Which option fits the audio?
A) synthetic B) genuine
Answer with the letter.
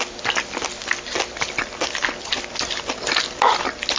B